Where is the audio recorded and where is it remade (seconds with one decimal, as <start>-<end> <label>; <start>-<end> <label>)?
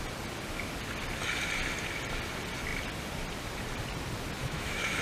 0.0-4.4 recorded; 4.4-5.0 remade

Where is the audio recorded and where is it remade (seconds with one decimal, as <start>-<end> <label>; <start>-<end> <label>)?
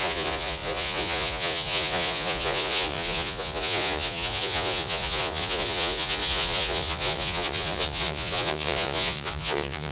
0.0-9.9 remade